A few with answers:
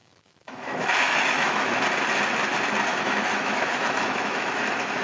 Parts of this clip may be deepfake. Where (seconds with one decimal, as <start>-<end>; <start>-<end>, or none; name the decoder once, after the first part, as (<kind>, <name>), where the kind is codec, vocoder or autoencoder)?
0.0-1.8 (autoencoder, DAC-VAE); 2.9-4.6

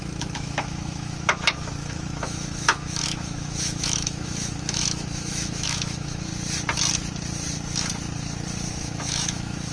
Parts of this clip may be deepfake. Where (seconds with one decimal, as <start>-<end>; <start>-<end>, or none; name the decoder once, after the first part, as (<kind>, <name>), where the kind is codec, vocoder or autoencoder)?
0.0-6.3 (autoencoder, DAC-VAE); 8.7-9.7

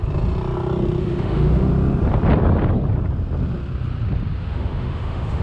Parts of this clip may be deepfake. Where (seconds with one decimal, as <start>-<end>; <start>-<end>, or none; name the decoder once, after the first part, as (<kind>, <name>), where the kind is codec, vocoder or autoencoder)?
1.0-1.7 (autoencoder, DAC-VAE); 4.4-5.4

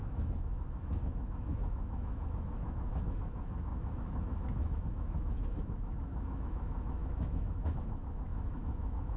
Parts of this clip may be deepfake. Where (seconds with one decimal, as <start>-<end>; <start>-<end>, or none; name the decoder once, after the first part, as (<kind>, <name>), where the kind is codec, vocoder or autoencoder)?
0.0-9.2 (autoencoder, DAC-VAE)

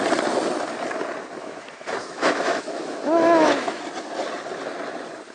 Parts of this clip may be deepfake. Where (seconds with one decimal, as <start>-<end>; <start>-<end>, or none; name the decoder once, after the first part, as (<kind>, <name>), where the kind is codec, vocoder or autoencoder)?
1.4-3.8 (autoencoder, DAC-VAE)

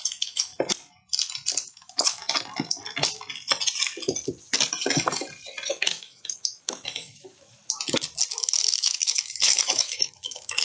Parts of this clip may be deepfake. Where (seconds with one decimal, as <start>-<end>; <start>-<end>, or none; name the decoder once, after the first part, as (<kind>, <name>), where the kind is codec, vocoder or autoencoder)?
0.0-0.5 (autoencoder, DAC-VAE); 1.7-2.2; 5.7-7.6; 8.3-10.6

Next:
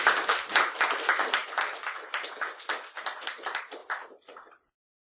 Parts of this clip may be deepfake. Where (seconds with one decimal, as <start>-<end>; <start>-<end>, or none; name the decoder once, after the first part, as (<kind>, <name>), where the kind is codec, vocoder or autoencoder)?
none